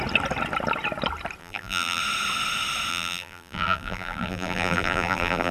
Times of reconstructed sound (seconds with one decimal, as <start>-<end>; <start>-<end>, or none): 1.4-2.0; 2.9-5.5